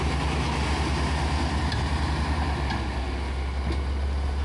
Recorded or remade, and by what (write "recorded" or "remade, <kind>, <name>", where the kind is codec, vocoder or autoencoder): recorded